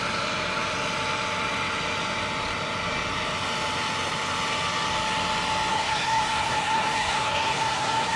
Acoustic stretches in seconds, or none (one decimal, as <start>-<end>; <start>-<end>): 0.0-5.7